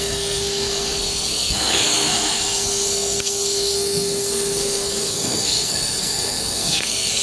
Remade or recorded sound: remade